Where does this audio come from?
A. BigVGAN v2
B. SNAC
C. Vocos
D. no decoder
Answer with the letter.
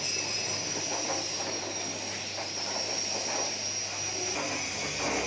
D